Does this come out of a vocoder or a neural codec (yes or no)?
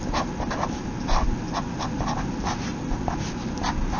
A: no